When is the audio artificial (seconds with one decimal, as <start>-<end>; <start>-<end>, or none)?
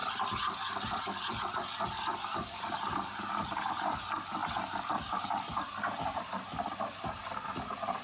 none